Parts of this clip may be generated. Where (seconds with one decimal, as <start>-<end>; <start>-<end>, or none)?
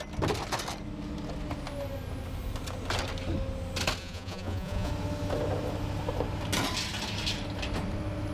4.0-4.9